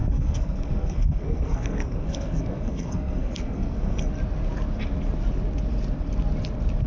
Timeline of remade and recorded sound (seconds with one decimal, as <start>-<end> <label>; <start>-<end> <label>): 0.0-4.1 remade; 4.1-6.9 recorded